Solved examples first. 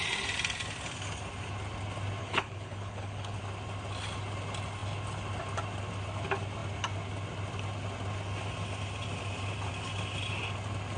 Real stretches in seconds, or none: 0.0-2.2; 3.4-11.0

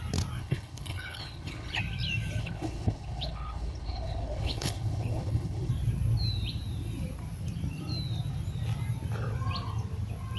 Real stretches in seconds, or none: 0.0-0.4; 1.8-2.4; 5.7-10.4

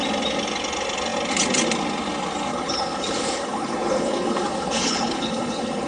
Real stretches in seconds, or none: 0.0-2.5